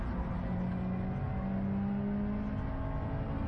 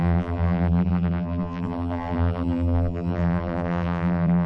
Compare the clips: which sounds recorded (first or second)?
first